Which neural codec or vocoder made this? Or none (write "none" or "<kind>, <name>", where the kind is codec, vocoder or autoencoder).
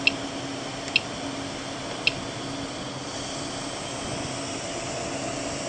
none